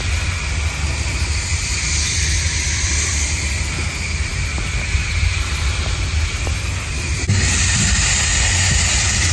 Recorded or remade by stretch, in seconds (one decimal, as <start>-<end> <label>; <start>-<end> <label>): 0.0-9.3 recorded